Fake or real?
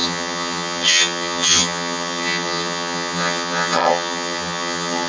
fake